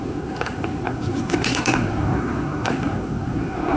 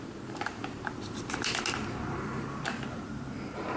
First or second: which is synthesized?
first